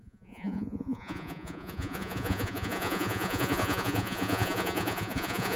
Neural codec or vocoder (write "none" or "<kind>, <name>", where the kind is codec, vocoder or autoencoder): vocoder, Vocos